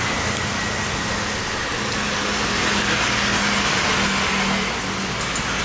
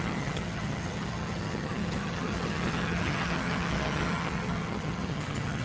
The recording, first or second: first